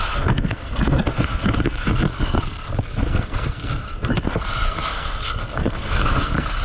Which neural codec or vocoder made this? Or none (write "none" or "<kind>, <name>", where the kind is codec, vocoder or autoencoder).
codec, SNAC